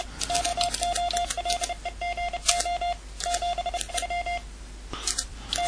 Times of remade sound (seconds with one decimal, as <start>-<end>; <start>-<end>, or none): none